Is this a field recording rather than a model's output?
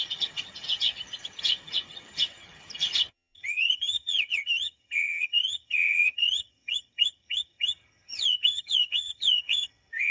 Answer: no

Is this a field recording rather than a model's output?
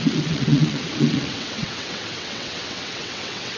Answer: no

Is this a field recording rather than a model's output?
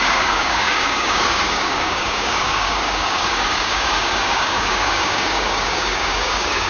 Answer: no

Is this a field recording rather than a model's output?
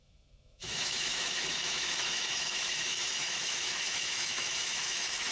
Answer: no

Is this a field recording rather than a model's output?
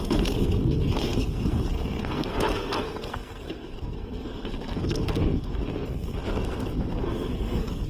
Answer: no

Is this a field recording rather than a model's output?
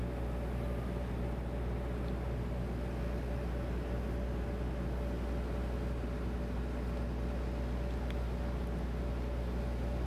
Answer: yes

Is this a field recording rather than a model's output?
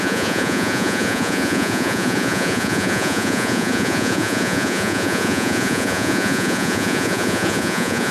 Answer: no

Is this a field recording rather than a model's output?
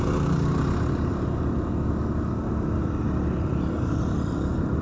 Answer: yes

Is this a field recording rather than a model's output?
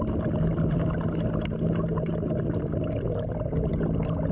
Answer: yes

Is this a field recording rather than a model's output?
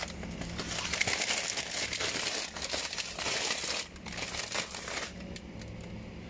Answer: yes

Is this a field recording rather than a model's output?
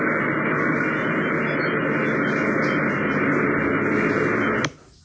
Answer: yes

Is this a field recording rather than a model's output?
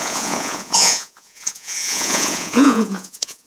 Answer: no